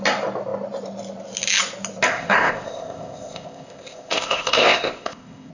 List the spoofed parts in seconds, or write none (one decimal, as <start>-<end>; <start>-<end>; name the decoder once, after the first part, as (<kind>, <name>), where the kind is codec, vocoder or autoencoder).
2.1-5.5 (codec, ZipCodec)